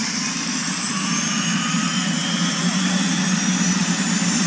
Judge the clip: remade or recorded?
remade